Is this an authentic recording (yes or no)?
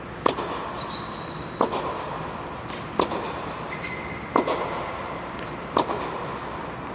yes